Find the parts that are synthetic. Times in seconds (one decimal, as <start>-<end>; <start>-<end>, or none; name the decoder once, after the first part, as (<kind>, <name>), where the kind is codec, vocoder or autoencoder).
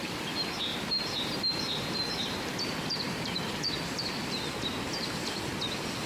0.7-4.0 (vocoder, BigVGAN v2)